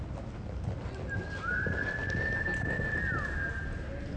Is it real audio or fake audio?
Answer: real